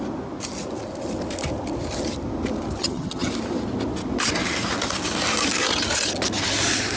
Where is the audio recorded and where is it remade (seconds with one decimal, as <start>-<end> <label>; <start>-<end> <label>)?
0.0-2.8 recorded; 2.8-3.3 remade; 3.3-7.0 recorded